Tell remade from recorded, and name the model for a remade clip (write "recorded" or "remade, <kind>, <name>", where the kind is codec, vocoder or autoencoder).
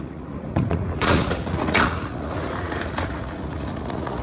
remade, vocoder, Vocos